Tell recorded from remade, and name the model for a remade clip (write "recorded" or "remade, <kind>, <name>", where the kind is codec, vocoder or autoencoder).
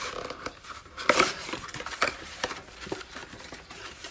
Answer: remade, vocoder, BigVGAN v2